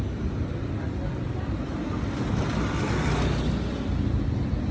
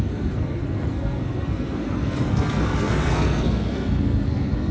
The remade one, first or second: second